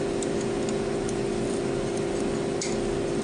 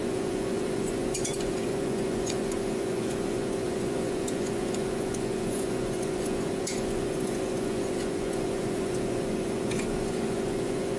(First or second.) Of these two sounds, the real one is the first